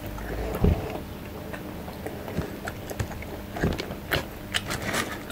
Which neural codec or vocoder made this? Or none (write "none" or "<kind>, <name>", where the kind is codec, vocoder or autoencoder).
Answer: none